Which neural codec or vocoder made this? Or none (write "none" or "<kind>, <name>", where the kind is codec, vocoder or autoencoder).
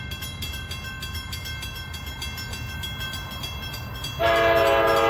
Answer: none